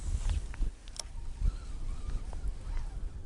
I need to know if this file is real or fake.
real